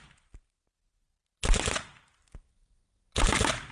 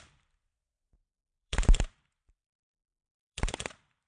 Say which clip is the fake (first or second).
second